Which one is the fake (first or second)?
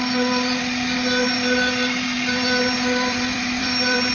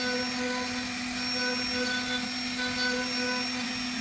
first